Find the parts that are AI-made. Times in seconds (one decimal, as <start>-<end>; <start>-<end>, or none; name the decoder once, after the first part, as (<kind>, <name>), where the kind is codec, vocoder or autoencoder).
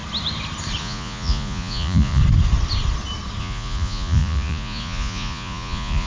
0.8-2.2 (vocoder, Vocos); 3.4-6.1